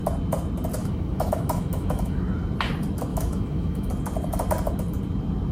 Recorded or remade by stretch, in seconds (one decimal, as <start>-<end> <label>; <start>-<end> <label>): 0.0-0.8 recorded; 0.8-2.2 remade; 2.2-3.1 recorded; 3.1-3.9 remade; 3.9-5.5 recorded